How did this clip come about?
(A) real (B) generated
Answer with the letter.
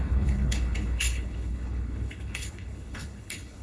B